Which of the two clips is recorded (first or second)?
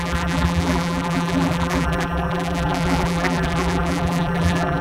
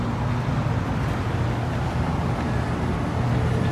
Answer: second